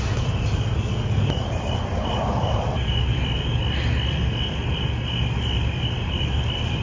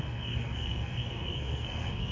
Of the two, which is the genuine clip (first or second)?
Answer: first